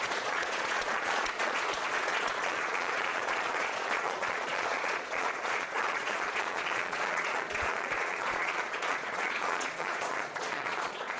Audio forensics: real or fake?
fake